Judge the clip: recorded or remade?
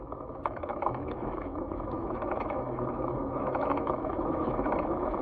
remade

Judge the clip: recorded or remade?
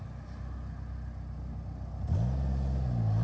recorded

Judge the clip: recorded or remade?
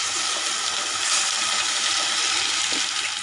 recorded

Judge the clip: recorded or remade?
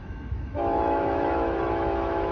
remade